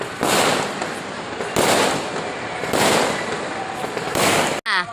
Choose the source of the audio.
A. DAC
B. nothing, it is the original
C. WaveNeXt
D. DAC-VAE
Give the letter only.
B